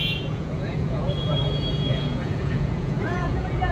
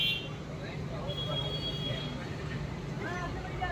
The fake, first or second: first